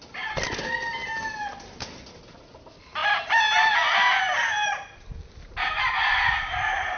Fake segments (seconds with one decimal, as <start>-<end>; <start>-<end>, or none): none